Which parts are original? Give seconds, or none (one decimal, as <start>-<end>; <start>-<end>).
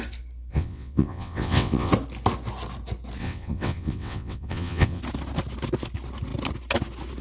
0.0-0.5; 1.9-3.2; 5.0-7.2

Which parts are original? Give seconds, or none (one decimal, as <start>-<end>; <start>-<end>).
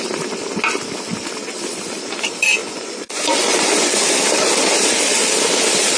0.0-2.6; 3.9-6.0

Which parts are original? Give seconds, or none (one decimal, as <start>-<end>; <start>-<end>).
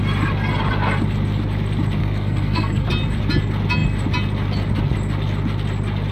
0.0-2.0; 2.9-6.1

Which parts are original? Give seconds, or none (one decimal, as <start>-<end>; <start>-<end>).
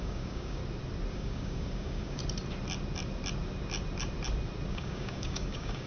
0.6-1.1; 2.2-4.7